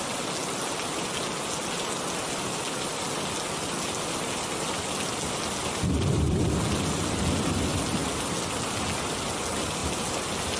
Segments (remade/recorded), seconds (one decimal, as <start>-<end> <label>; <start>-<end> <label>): 0.0-10.6 recorded